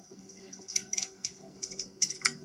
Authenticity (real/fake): fake